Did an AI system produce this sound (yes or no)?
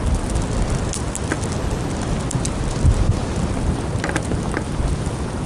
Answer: no